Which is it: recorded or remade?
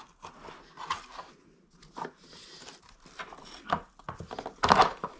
recorded